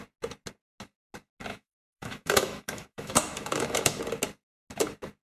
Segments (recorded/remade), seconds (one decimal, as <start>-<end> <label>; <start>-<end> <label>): 0.0-1.5 recorded; 1.5-4.0 remade; 4.0-5.3 recorded